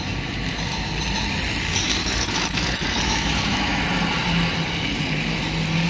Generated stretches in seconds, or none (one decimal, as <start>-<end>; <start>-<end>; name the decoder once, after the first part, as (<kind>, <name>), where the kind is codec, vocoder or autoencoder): 2.0-3.8 (autoencoder, DAC-VAE)